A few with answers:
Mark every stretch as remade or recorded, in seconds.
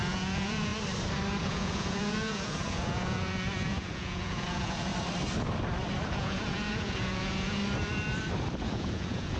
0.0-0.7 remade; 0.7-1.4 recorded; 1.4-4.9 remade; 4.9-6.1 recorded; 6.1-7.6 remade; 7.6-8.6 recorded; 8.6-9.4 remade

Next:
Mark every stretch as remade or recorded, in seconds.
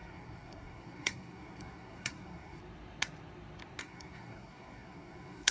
0.0-2.6 remade; 2.6-3.8 recorded; 3.8-5.5 remade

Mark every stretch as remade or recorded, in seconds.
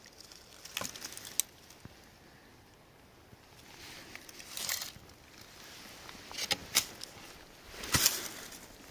0.0-8.9 recorded